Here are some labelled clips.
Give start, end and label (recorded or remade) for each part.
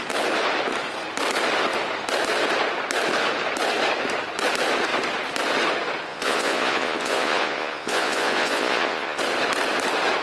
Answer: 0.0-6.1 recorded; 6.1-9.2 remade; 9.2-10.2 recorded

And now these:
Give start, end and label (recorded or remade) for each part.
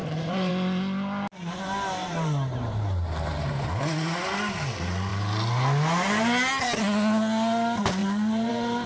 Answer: 0.0-0.5 remade; 0.5-2.0 recorded; 2.0-3.8 remade; 3.8-8.0 recorded; 8.0-8.5 remade; 8.5-8.9 recorded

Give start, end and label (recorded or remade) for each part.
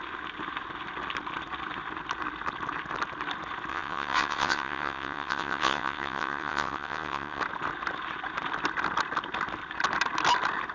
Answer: 0.0-3.7 recorded; 3.7-7.4 remade; 7.4-10.7 recorded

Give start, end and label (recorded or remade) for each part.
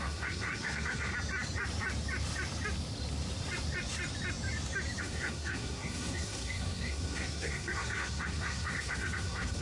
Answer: 0.0-1.1 remade; 1.1-5.0 recorded; 5.0-9.6 remade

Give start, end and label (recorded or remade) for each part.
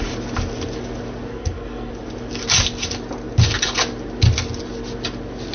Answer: 0.0-1.3 recorded; 1.3-1.9 remade; 1.9-5.5 recorded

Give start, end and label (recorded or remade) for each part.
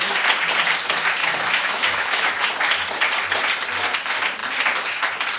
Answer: 0.0-1.2 recorded; 1.2-2.5 remade; 2.5-5.4 recorded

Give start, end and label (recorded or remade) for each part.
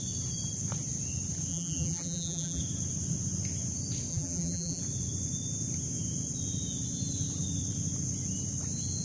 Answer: 0.0-1.5 recorded; 1.5-2.6 remade; 2.6-4.1 recorded; 4.1-4.8 remade; 4.8-9.0 recorded